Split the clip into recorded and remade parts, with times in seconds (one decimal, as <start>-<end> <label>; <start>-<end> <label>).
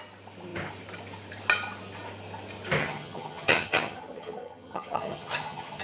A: 0.0-2.8 recorded; 2.8-5.8 remade